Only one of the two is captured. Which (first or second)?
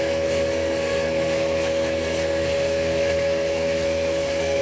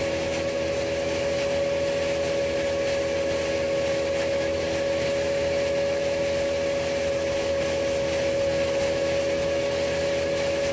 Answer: second